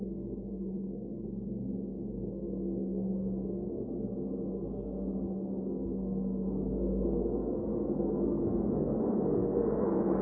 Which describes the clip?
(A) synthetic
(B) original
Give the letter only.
A